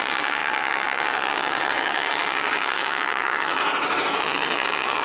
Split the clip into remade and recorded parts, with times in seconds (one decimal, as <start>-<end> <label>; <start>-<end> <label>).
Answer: 0.0-3.6 remade; 3.6-4.2 recorded; 4.2-5.0 remade